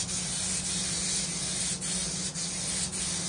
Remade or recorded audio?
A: recorded